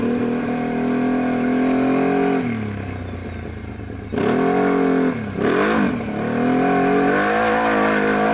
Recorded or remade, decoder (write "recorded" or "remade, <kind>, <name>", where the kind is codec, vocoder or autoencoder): recorded